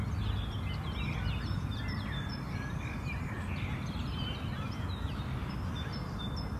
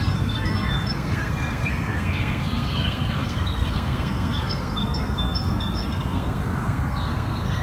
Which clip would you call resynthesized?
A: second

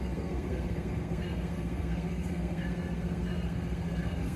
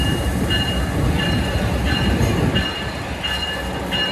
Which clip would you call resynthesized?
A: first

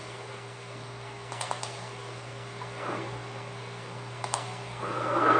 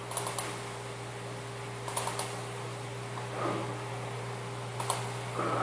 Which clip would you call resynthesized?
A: first